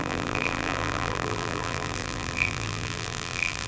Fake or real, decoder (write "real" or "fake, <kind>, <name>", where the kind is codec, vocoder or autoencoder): fake, vocoder, BigVGAN v2